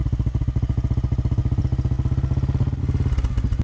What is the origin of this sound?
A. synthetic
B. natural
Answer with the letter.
B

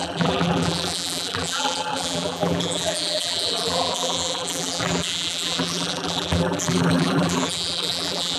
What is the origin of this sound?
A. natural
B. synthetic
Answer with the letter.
B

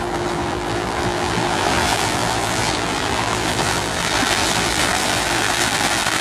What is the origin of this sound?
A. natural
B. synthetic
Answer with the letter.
B